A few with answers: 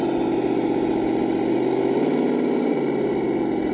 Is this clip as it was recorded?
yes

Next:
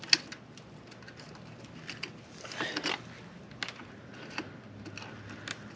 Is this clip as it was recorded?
yes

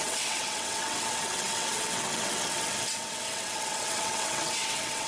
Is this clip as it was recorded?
no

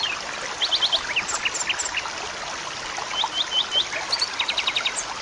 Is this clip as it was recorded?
yes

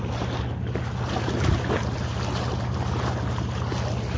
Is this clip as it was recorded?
yes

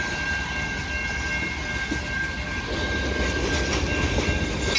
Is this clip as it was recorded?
yes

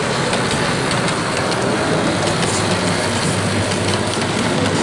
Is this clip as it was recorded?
yes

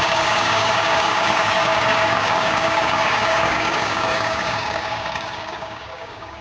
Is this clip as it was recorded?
no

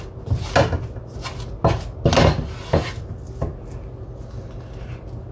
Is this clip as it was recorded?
yes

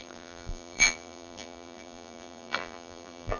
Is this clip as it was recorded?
no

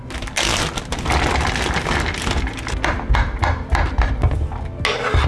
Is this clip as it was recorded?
yes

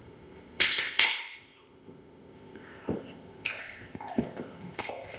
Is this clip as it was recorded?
no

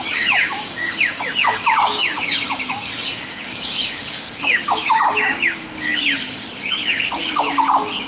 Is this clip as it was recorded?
no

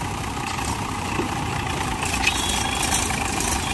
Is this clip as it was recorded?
yes